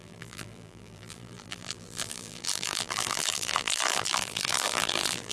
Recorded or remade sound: remade